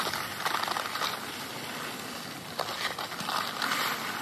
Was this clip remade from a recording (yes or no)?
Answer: no